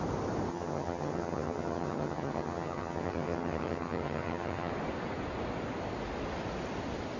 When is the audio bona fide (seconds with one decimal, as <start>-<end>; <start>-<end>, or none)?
0.0-0.5; 4.7-7.2